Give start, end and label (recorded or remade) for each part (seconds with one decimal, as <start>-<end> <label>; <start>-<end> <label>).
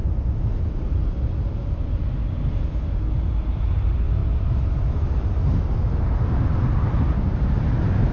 0.0-8.1 recorded